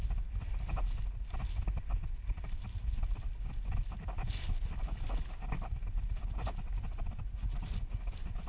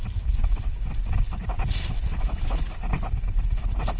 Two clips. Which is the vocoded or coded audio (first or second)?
second